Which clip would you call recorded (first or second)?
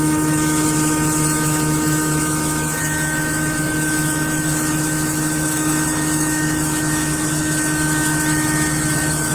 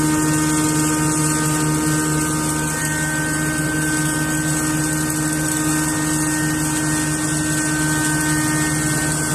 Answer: second